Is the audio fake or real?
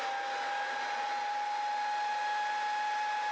real